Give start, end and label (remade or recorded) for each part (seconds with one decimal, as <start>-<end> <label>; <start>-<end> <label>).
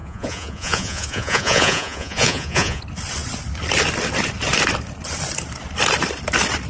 0.0-2.8 remade; 2.8-6.7 recorded